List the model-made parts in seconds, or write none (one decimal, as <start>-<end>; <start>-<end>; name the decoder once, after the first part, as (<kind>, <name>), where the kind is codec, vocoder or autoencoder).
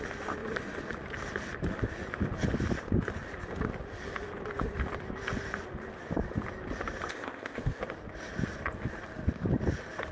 7.1-7.8 (codec, ZipCodec)